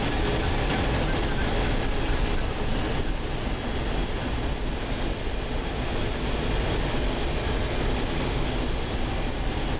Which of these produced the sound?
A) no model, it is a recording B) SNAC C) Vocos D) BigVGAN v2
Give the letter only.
A